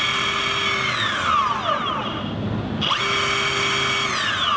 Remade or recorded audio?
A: recorded